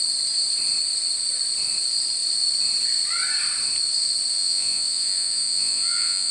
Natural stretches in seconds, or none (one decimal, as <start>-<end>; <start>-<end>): 0.0-4.4